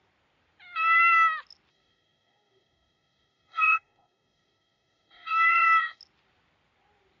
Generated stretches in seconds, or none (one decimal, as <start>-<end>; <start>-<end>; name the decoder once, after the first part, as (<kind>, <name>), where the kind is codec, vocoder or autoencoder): 1.7-6.0 (codec, DAC)